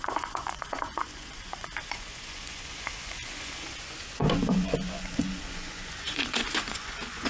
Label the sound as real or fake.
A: fake